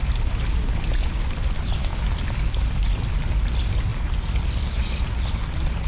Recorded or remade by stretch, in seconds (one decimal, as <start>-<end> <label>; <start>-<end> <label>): 0.0-5.9 recorded